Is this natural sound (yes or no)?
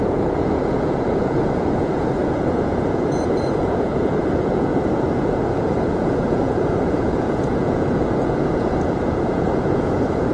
no